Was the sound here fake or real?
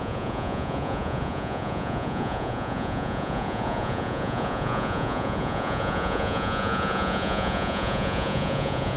fake